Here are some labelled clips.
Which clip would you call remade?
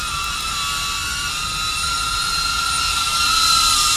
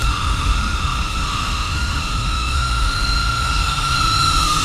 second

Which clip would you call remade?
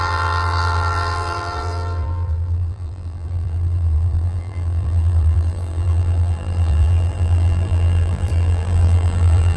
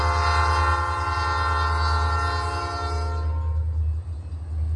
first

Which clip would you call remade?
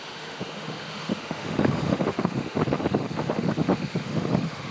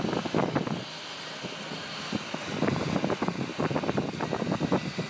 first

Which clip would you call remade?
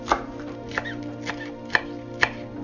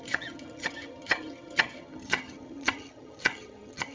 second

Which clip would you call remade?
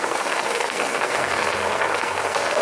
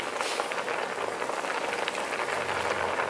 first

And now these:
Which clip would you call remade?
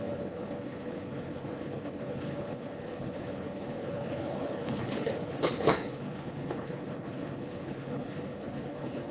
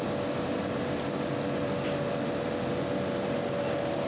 first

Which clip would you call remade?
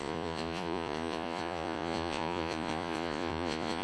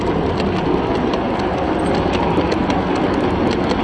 first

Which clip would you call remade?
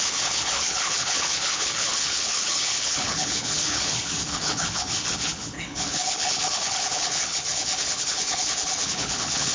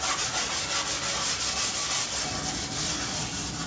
first